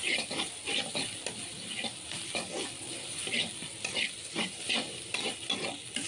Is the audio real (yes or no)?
yes